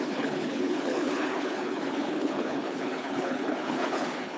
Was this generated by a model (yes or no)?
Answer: yes